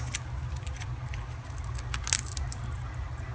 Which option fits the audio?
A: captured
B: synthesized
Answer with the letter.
A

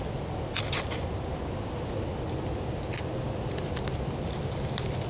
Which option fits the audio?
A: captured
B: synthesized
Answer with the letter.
A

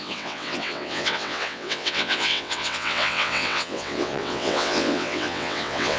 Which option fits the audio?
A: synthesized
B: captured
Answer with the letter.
A